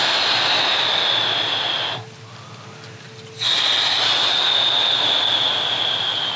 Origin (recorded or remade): recorded